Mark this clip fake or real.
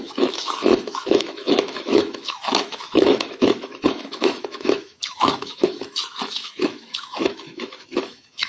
fake